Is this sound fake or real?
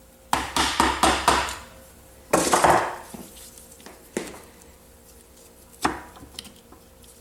real